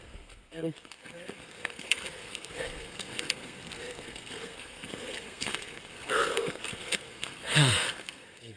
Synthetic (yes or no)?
yes